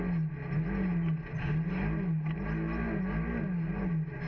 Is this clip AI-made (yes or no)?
no